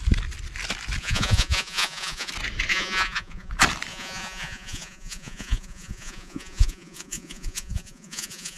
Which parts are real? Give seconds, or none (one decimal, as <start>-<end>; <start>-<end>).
0.0-1.0; 2.3-2.7; 3.5-3.9